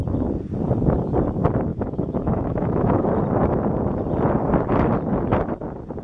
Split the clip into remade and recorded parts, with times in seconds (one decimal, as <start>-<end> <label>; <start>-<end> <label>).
0.0-1.7 recorded; 1.7-3.1 remade; 3.1-6.0 recorded